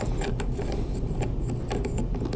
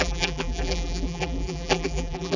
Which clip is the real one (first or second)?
first